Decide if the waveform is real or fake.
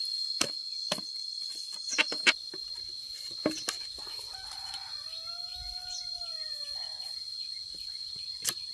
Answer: real